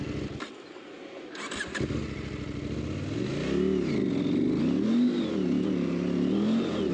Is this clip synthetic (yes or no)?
no